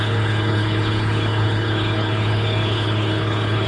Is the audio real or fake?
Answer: fake